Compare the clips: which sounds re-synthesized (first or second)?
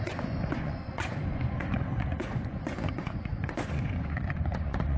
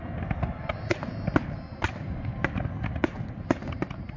first